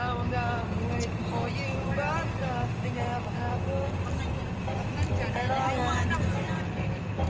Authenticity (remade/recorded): recorded